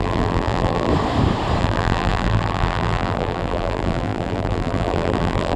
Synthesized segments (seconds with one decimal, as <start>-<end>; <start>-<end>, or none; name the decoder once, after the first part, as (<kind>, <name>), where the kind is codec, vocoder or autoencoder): 0.0-0.9 (vocoder, BigVGAN v2); 1.6-5.6